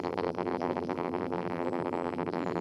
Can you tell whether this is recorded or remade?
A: remade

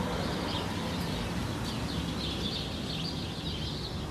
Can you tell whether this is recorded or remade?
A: recorded